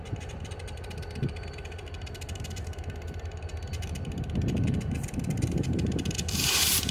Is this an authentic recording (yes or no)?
yes